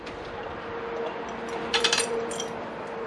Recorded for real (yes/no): no